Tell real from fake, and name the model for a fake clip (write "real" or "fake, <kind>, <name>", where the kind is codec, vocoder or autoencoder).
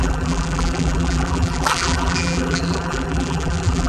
fake, vocoder, BigVGAN v2